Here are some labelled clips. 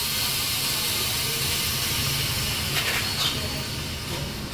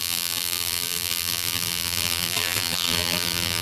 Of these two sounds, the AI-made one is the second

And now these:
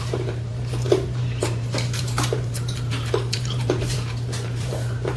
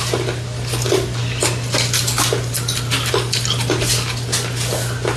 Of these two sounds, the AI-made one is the first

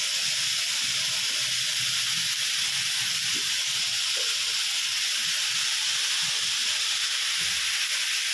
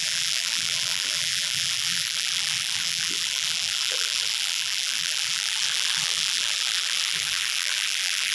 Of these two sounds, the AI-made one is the second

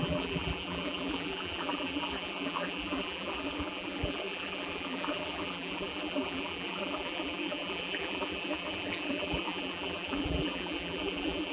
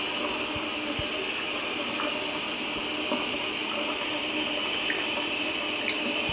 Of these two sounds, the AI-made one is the first